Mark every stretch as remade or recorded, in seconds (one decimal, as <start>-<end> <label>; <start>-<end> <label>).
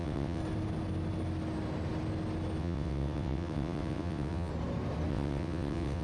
0.0-0.4 remade; 0.4-2.6 recorded; 2.6-4.5 remade; 4.5-5.1 recorded; 5.1-6.0 remade